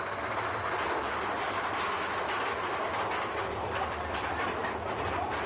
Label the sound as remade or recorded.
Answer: recorded